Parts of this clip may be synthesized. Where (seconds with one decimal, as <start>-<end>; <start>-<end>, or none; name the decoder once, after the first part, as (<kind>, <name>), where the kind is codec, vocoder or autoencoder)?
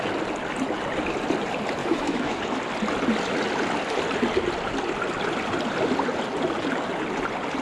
1.8-2.4 (autoencoder, DAC-VAE)